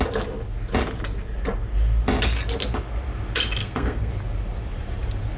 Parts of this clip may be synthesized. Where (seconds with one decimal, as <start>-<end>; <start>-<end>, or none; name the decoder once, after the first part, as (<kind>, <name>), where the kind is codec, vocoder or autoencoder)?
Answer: 3.6-4.1 (codec, SNAC)